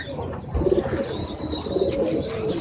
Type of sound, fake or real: real